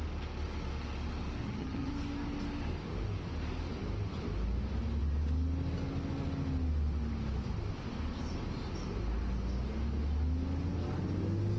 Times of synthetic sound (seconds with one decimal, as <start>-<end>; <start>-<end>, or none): 1.4-1.9